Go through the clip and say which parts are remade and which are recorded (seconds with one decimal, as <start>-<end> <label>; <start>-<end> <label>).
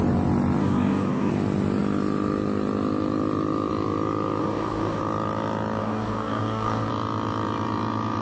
0.0-0.6 recorded; 0.6-1.3 remade; 1.3-4.4 recorded; 4.4-5.0 remade; 5.0-5.8 recorded; 5.8-6.9 remade; 6.9-8.2 recorded